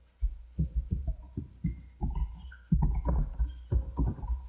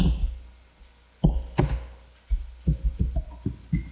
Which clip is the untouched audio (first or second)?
second